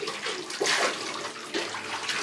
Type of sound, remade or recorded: recorded